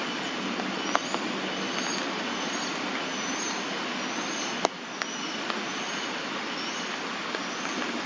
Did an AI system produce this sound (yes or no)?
no